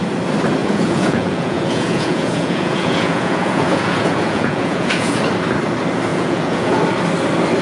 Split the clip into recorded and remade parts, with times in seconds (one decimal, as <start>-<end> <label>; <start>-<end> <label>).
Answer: 0.0-0.6 recorded; 0.6-5.2 remade; 5.2-6.1 recorded; 6.1-6.8 remade; 6.8-7.6 recorded